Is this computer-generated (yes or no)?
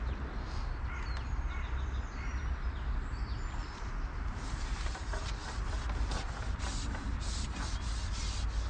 no